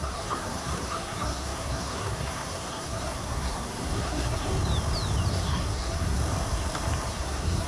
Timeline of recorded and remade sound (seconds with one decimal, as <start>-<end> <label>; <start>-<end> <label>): 0.0-4.5 remade; 4.5-5.3 recorded; 5.3-6.2 remade; 6.2-7.1 recorded; 7.1-7.7 remade